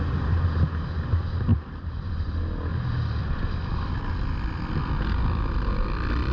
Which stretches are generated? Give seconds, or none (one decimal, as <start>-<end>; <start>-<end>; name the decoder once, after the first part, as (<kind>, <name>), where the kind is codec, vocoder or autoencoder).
1.5-2.3 (vocoder, BigVGAN v2)